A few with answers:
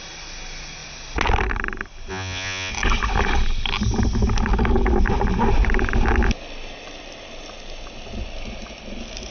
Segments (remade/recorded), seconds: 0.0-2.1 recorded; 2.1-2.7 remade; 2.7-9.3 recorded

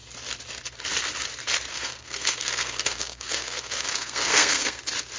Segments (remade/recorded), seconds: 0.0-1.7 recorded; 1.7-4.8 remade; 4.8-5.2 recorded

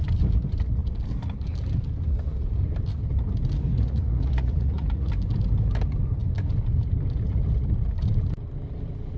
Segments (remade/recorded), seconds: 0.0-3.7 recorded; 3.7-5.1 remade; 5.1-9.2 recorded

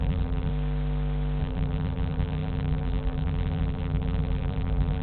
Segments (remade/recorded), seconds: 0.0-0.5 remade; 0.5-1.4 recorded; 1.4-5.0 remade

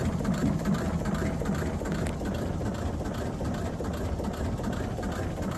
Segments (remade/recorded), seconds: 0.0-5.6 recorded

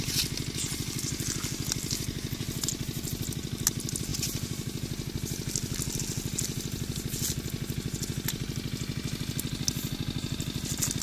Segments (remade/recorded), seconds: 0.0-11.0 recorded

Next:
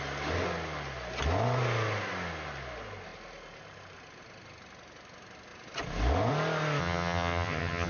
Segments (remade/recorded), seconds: 0.0-6.8 recorded; 6.8-7.9 remade